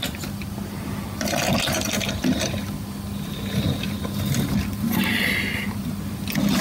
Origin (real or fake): real